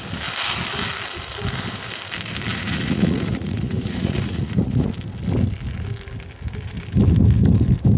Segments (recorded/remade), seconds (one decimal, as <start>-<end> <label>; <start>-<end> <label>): 0.0-2.5 recorded; 2.5-4.9 remade; 4.9-8.0 recorded